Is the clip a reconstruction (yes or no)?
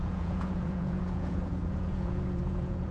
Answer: yes